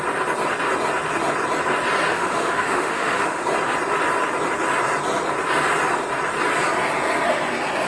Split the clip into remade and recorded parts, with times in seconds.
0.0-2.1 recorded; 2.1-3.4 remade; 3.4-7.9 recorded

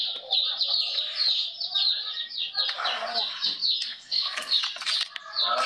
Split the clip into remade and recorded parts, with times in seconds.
0.0-3.9 recorded; 3.9-4.6 remade; 4.6-5.7 recorded

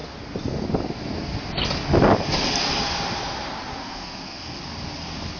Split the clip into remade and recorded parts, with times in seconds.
0.0-3.8 recorded; 3.8-4.6 remade; 4.6-5.4 recorded

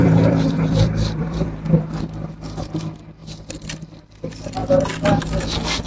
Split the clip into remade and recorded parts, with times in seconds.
0.0-3.2 remade; 3.2-4.0 recorded; 4.0-4.6 remade; 4.6-5.9 recorded